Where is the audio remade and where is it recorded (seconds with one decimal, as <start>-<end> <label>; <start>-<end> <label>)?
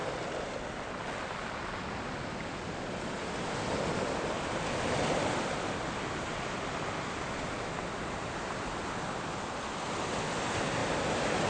0.0-11.5 recorded